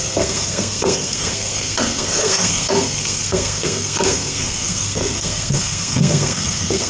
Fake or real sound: fake